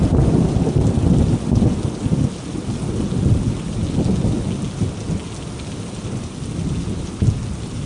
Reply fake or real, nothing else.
real